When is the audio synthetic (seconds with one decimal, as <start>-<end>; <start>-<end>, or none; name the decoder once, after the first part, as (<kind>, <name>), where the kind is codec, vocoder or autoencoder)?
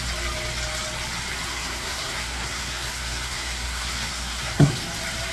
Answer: 1.5-4.7 (codec, SNAC)